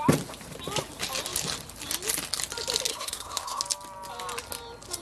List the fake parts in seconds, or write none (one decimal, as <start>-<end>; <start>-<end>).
2.9-3.6